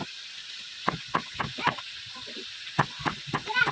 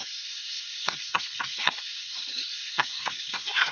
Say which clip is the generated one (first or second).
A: second